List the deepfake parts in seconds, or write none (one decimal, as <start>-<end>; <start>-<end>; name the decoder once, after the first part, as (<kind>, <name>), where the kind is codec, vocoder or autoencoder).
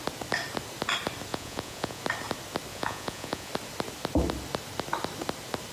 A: 1.3-2.0 (vocoder, Vocos); 2.7-3.5